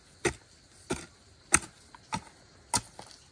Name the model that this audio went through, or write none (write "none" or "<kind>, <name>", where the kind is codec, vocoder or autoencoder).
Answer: none